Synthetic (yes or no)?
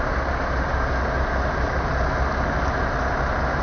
no